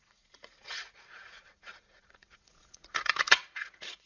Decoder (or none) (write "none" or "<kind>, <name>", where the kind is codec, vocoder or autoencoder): vocoder, Vocos